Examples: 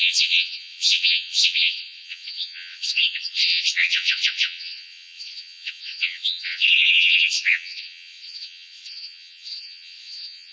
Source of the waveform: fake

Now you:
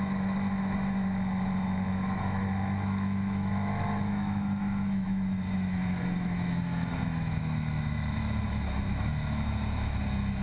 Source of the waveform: fake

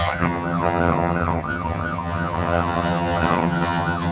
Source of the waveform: fake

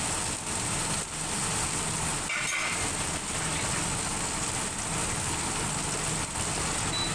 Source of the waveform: real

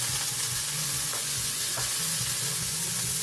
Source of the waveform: fake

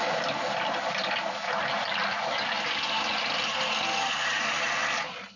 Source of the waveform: real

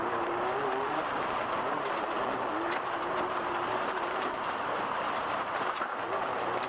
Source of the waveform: fake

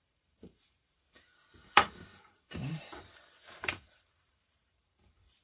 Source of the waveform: fake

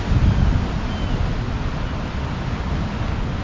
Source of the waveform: real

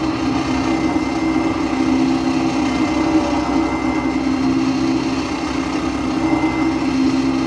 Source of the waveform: real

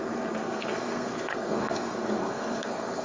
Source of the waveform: fake